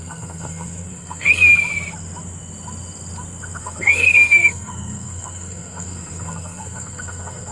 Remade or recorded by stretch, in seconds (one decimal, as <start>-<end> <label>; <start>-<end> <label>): 0.0-1.5 remade; 1.5-3.6 recorded; 3.6-7.5 remade